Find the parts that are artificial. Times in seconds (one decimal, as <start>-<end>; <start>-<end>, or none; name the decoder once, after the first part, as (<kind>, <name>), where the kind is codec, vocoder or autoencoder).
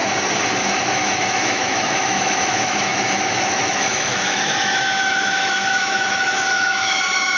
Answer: 0.9-7.4 (autoencoder, DAC-VAE)